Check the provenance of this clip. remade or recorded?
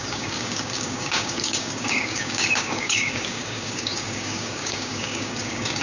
remade